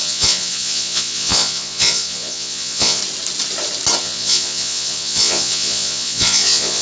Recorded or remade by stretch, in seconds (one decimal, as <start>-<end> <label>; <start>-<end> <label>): 0.0-3.0 remade; 3.0-4.0 recorded; 4.0-6.8 remade